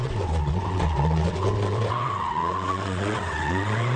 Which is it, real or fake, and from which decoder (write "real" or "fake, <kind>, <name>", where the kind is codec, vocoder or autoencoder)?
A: fake, vocoder, WaveNeXt